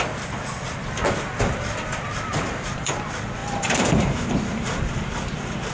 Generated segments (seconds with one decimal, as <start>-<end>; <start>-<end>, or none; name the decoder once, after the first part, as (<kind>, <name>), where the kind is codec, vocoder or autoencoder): 2.3-2.9 (vocoder, BigVGAN v2); 3.4-4.8